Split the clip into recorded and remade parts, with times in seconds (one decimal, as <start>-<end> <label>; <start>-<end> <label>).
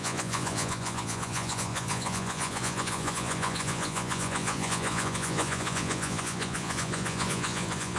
0.0-8.0 remade